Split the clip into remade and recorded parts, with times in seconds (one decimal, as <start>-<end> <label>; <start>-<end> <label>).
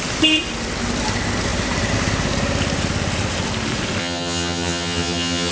0.0-4.0 recorded; 4.0-5.5 remade